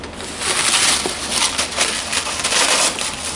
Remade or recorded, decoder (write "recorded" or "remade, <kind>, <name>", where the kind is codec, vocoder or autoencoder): recorded